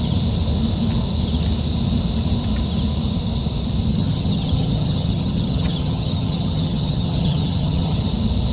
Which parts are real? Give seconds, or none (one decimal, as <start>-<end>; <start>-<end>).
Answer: 0.0-3.9; 8.1-8.5